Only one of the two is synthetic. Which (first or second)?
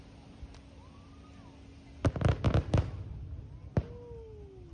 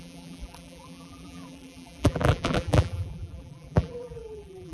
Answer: second